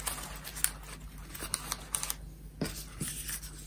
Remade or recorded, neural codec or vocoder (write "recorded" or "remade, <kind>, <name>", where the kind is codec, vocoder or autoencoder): recorded